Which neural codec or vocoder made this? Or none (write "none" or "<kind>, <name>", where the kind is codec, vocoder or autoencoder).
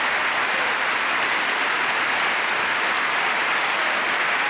none